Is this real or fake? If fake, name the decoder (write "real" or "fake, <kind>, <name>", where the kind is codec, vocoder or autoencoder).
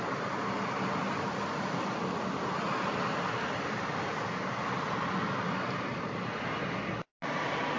real